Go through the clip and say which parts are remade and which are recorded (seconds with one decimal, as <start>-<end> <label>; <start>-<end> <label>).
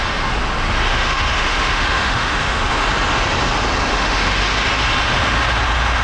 0.0-0.9 recorded; 0.9-2.7 remade; 2.7-3.9 recorded; 3.9-4.4 remade; 4.4-6.0 recorded